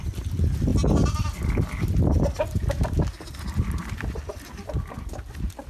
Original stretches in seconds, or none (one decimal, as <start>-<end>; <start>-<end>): 0.0-5.7